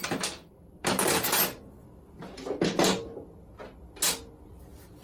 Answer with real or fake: real